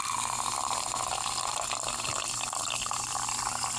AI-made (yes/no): no